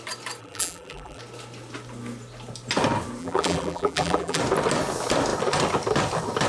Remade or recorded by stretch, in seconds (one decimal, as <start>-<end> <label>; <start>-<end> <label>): 0.0-0.4 recorded; 0.4-1.2 remade; 1.2-3.2 recorded; 3.2-4.4 remade; 4.4-6.5 recorded